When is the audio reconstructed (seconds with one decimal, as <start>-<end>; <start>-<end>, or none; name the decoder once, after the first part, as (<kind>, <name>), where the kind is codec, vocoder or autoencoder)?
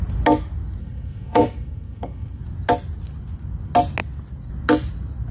0.8-2.4 (codec, SNAC)